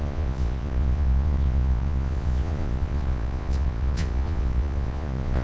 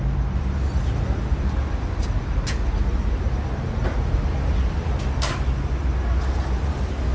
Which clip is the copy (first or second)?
first